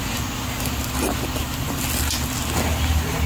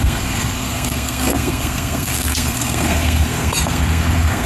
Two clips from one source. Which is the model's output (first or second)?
second